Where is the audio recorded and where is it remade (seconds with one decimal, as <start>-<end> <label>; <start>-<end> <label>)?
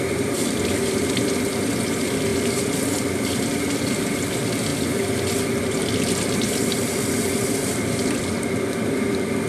0.0-4.7 remade; 4.7-5.6 recorded; 5.6-9.5 remade